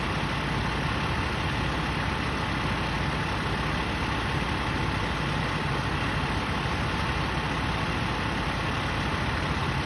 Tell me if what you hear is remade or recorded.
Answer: recorded